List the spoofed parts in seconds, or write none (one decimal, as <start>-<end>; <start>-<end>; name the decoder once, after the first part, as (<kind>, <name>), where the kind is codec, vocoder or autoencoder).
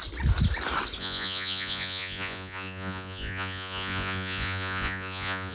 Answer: 1.0-5.5 (vocoder, Vocos)